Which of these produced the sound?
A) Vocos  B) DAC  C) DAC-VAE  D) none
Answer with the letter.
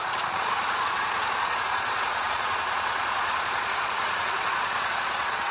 A